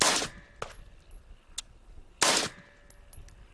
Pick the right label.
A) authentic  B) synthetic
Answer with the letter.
A